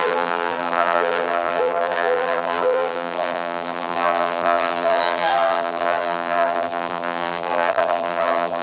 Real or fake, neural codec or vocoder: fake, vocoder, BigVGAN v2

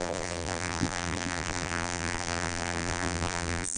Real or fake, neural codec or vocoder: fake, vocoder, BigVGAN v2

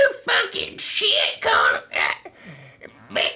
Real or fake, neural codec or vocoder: real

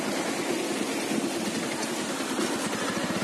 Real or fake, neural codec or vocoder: real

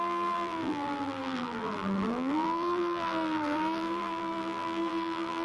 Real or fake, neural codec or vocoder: fake, vocoder, BigVGAN v2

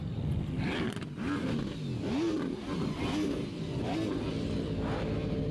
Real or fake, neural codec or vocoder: real